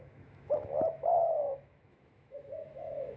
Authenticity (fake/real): fake